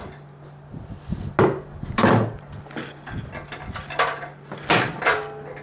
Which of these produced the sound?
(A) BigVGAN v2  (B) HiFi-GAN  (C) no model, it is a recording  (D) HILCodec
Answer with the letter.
C